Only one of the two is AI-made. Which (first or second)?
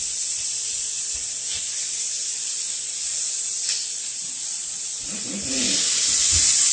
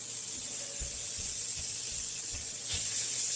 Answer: second